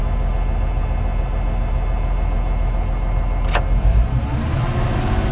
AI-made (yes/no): no